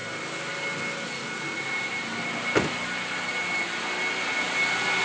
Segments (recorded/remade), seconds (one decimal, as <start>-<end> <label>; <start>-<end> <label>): 0.0-5.0 recorded